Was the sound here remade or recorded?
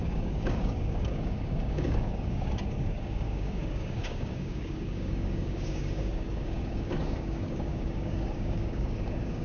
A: remade